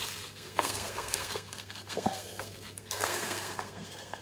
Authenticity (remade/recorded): remade